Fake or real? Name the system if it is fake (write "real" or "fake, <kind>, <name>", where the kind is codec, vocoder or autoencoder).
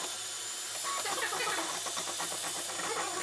real